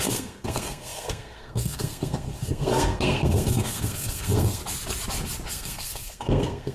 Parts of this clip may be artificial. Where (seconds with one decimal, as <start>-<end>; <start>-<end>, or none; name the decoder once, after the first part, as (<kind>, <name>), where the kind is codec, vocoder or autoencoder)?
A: 0.0-4.6 (codec, SNAC); 5.5-6.7